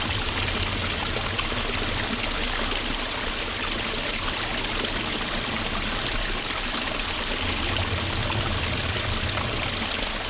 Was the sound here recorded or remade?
recorded